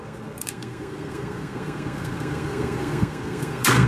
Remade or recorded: remade